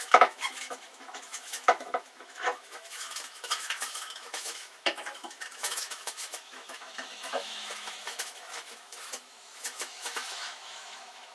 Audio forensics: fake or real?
fake